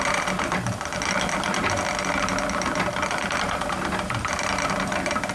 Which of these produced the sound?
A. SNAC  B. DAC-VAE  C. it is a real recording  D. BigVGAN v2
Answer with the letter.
C